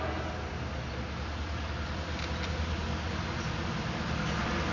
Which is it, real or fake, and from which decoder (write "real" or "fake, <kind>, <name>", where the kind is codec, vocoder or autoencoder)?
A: real